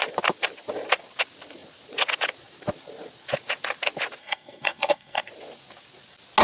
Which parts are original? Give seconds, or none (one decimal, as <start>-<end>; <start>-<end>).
0.0-4.2; 5.3-6.4